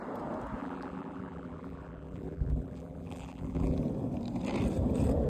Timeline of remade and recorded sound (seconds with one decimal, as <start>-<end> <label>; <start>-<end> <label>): 0.0-0.6 recorded; 0.6-3.8 remade; 3.8-5.3 recorded